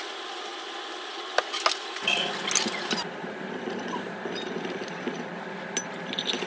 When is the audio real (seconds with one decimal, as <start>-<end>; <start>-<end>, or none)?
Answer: 0.0-6.5

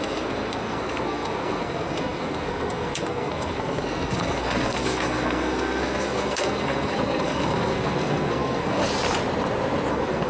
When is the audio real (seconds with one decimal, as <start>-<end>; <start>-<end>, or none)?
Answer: 8.8-9.9

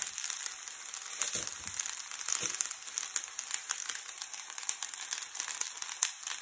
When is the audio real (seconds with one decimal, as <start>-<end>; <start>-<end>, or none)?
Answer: 0.0-3.6; 5.1-6.4